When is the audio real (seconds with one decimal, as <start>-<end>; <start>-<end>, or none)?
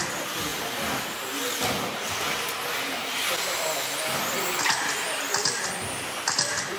0.0-6.8